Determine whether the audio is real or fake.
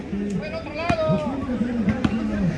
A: real